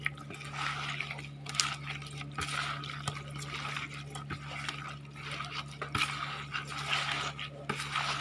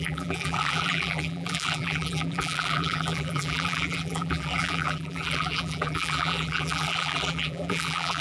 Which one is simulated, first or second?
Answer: second